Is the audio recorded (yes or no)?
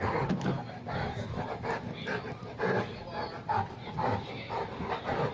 no